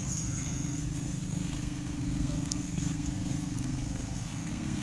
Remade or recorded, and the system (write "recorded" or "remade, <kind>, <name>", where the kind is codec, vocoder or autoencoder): remade, codec, SNAC